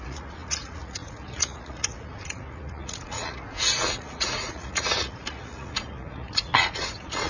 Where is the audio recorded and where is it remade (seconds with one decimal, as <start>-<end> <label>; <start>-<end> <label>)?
0.0-7.3 remade